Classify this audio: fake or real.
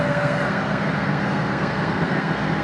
fake